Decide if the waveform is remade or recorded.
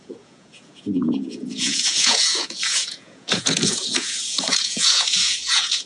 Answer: remade